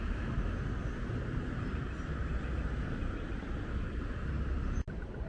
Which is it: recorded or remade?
recorded